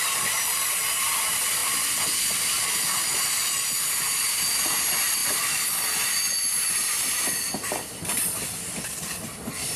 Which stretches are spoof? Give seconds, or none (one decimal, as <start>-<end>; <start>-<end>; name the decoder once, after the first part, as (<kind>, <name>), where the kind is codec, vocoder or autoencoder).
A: none